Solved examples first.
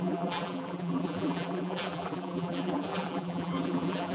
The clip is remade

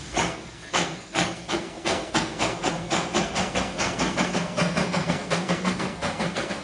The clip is remade